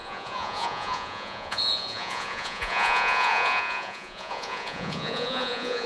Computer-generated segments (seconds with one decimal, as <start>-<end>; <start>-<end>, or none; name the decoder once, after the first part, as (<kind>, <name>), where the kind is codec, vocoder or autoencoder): 0.0-5.9 (vocoder, Vocos)